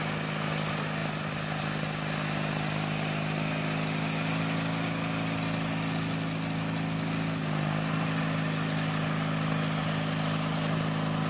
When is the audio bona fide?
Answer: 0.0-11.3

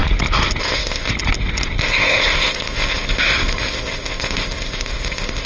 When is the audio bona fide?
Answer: 0.0-0.6; 1.1-1.8

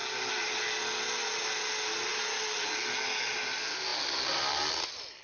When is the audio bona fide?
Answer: 0.0-5.2